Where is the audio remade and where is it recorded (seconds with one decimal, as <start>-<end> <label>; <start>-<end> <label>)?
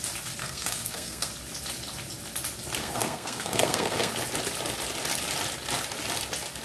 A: 0.0-0.4 recorded; 0.4-1.3 remade; 1.3-2.8 recorded; 2.8-4.1 remade; 4.1-6.6 recorded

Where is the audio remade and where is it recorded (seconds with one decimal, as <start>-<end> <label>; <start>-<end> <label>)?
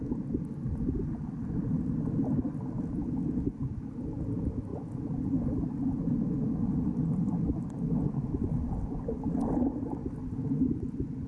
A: 0.0-10.0 remade; 10.0-10.8 recorded; 10.8-11.3 remade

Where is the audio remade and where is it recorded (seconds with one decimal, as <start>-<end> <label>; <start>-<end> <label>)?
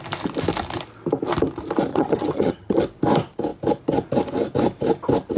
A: 0.0-1.9 recorded; 1.9-2.8 remade; 2.8-5.4 recorded